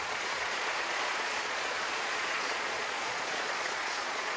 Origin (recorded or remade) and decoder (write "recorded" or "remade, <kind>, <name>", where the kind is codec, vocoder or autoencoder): remade, vocoder, Vocos